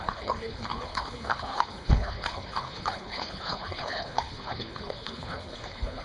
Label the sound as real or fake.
fake